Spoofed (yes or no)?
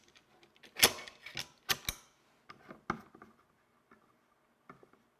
no